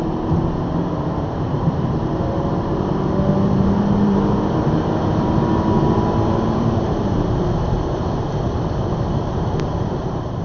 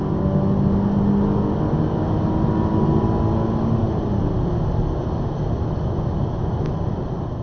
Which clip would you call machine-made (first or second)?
first